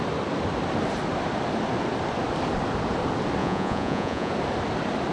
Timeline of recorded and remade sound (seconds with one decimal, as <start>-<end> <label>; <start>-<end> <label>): 0.0-3.4 recorded; 3.4-4.3 remade; 4.3-5.1 recorded